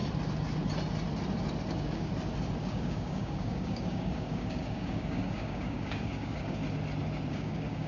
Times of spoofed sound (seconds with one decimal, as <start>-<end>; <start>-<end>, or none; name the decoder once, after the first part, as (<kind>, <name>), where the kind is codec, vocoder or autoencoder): 1.7-2.1 (codec, DAC); 2.6-6.6; 7.3-7.9